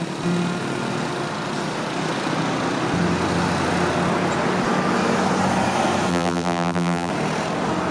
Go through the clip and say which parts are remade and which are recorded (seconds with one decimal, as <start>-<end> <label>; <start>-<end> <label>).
0.0-6.1 recorded; 6.1-7.1 remade; 7.1-7.9 recorded